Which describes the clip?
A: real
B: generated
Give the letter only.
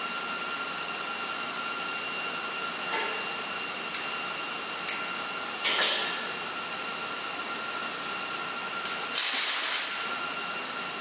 A